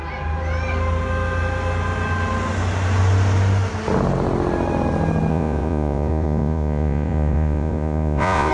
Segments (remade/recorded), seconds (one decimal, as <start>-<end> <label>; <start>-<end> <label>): 0.0-5.3 recorded; 5.3-8.5 remade